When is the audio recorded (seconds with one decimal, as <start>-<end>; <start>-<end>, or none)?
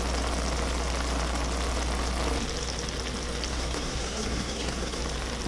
0.0-3.5; 5.0-5.5